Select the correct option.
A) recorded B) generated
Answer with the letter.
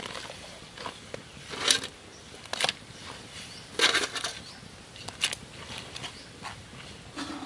A